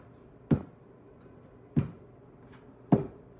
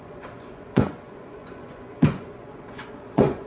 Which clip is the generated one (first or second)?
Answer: second